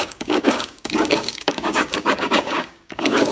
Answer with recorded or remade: remade